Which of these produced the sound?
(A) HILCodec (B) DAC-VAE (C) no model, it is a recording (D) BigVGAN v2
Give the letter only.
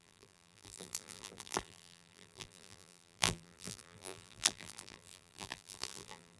D